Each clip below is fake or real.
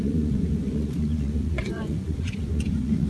fake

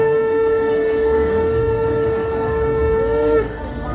fake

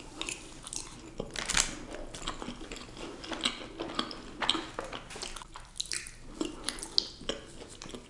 real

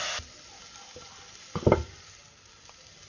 real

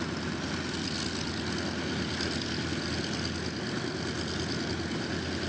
real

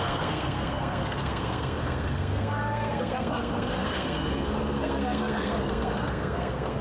fake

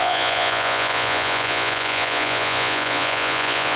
fake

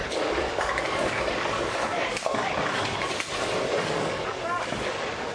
fake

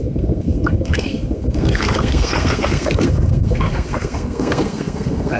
fake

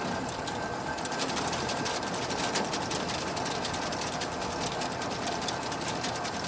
real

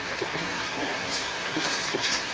fake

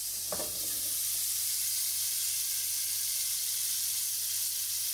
real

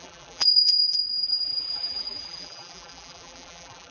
fake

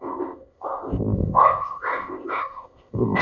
fake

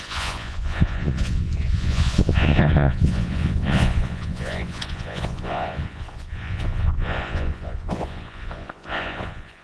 fake